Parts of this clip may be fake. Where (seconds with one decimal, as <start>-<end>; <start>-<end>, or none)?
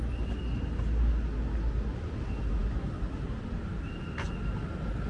none